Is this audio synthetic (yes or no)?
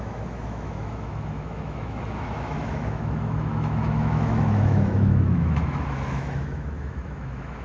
yes